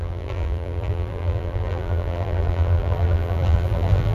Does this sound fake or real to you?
fake